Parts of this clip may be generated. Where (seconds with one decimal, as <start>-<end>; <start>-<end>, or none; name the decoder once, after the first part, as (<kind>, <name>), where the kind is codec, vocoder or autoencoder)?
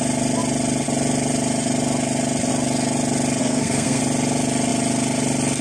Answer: 3.4-4.0 (codec, SNAC)